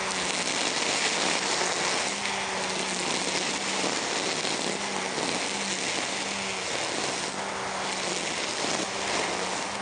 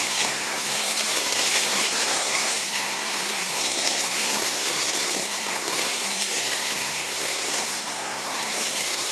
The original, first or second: first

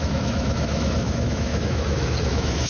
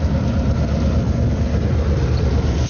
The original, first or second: second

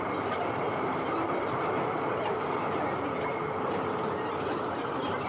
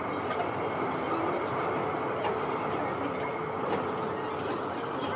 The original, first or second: second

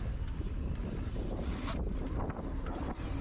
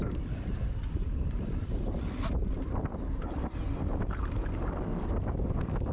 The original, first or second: first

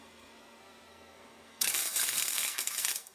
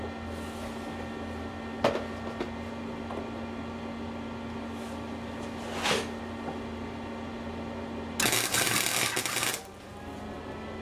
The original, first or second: second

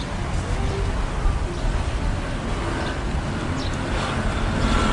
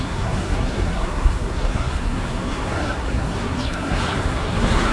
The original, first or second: first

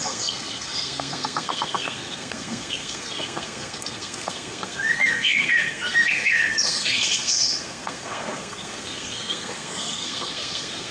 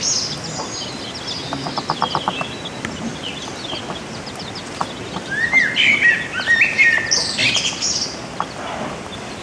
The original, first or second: second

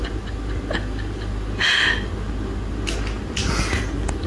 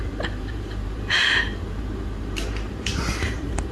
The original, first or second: first